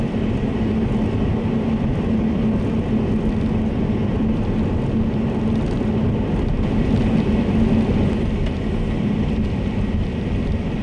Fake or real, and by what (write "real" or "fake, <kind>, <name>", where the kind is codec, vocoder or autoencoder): real